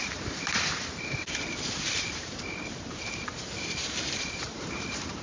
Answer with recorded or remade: remade